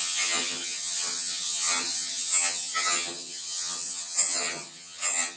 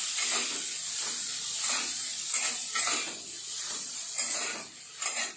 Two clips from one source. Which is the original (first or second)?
second